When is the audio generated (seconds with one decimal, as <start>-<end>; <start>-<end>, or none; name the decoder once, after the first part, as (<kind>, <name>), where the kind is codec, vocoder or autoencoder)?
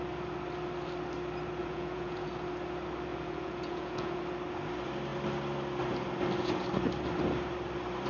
1.6-2.3 (vocoder, Vocos); 3.1-4.2